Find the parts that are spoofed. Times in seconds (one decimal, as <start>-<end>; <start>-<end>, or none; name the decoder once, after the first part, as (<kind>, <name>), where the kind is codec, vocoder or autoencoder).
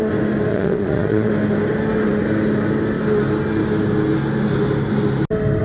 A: 0.5-1.3 (vocoder, Vocos)